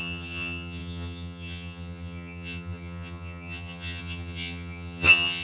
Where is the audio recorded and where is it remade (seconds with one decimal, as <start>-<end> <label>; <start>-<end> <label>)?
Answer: 0.0-5.4 remade